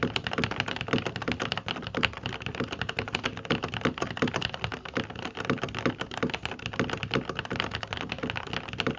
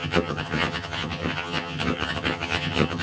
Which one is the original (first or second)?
first